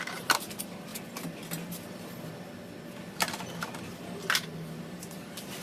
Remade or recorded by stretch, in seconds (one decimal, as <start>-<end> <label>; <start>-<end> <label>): 0.0-5.6 recorded